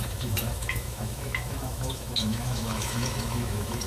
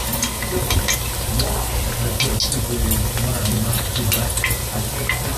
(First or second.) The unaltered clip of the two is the second